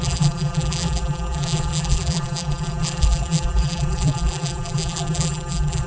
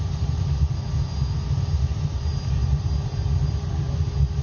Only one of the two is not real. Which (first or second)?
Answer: first